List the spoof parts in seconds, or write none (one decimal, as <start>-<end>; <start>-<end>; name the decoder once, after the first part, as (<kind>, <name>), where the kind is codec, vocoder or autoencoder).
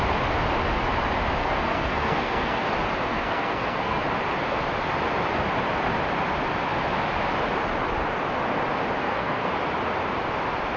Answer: 1.4-2.6 (codec, SNAC); 3.1-4.0; 9.0-9.5